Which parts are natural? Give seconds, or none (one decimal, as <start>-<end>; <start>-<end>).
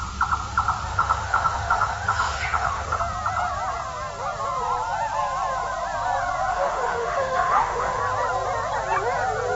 0.0-0.9; 3.0-6.5; 8.0-9.5